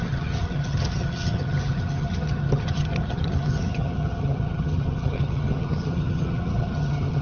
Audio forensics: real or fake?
fake